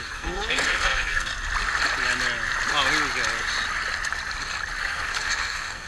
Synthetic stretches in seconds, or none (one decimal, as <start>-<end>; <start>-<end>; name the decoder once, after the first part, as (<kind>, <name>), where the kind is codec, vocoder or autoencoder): 0.0-1.3 (codec, SNAC); 4.8-5.9